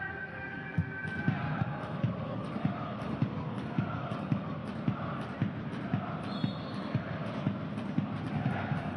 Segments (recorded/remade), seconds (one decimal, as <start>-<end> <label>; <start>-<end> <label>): 0.0-0.8 remade; 0.8-1.5 recorded; 1.5-4.6 remade; 4.6-6.6 recorded; 6.6-7.2 remade; 7.2-8.3 recorded; 8.3-9.0 remade